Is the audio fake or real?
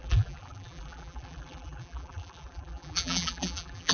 fake